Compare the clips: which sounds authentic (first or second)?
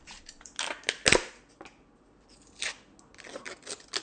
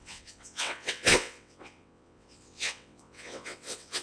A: first